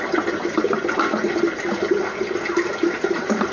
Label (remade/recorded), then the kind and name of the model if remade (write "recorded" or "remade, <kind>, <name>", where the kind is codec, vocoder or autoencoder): recorded